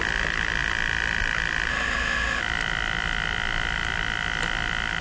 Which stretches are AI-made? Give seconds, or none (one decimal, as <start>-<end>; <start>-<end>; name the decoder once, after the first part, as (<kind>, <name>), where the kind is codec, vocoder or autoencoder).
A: 1.7-2.4 (autoencoder, DAC-VAE)